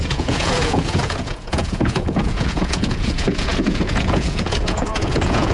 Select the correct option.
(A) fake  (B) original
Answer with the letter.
A